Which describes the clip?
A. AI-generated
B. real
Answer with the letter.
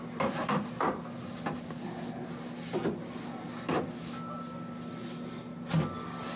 B